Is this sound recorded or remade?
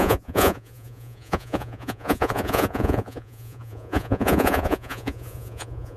remade